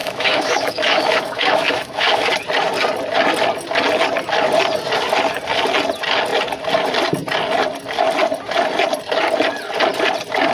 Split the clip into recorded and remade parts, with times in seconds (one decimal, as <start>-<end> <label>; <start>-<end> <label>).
0.0-2.3 remade; 2.3-10.5 recorded